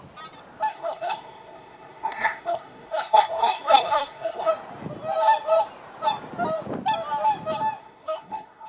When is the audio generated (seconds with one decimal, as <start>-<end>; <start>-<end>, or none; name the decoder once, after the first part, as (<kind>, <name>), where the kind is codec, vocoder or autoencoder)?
0.7-4.5 (codec, SNAC); 7.8-8.7